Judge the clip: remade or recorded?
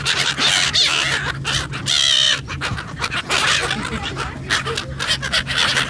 recorded